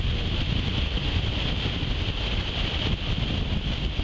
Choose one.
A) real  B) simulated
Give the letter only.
A